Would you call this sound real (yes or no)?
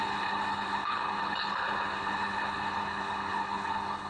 no